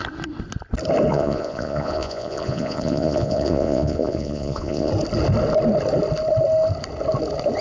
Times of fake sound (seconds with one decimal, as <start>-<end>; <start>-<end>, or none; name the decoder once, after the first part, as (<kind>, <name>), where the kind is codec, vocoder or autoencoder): 1.1-4.9 (vocoder, Vocos)